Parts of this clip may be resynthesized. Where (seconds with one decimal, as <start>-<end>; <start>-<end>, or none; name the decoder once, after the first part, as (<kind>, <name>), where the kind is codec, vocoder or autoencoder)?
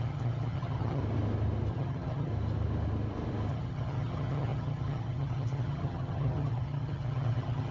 0.0-1.0 (vocoder, HiFi-GAN); 1.7-2.3; 3.5-7.7